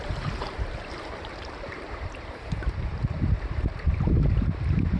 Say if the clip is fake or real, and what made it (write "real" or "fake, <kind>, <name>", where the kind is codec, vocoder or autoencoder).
fake, vocoder, BigVGAN v2